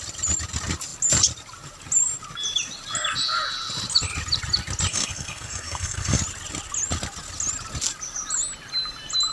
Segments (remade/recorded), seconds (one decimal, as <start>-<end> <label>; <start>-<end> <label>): 0.0-4.9 recorded; 4.9-6.2 remade; 6.2-9.3 recorded